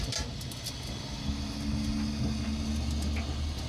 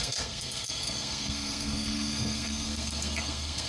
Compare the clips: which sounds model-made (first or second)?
second